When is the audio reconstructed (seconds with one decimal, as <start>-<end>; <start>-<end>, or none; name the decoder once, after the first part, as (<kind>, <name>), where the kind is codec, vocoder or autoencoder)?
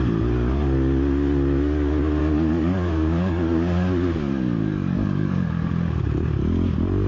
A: 2.2-5.7 (codec, DAC)